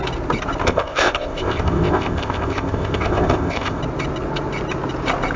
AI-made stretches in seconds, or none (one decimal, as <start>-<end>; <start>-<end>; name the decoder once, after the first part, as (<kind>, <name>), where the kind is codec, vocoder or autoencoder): 0.6-3.8 (codec, ZipCodec)